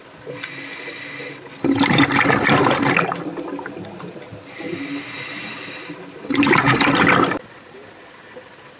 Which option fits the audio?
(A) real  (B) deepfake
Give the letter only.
A